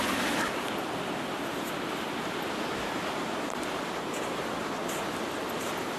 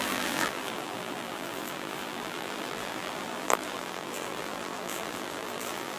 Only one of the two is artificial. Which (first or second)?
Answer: second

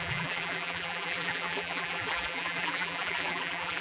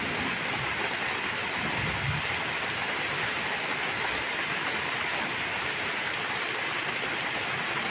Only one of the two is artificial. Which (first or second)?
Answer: first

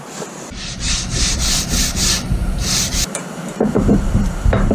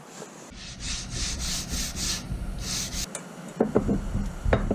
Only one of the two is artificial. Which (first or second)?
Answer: first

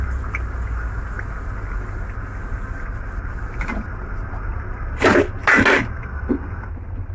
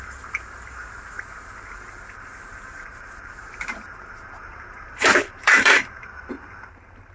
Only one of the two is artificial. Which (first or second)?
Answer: second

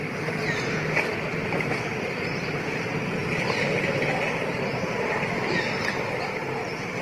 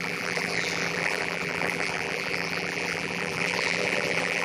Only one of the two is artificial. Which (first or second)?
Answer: second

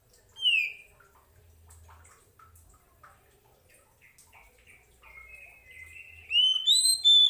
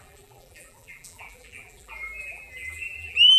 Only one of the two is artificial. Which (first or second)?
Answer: second